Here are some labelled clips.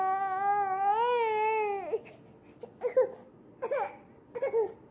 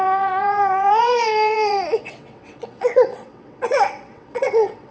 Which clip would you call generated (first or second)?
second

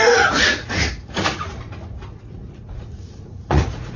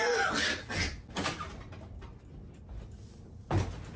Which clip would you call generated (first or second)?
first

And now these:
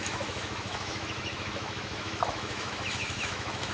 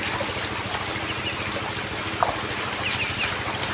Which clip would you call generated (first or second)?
first